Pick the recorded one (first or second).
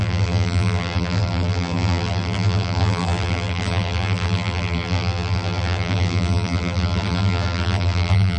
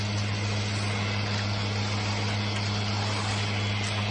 second